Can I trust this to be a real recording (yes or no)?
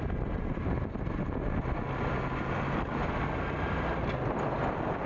yes